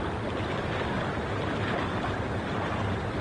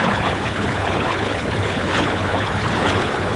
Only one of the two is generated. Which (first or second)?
second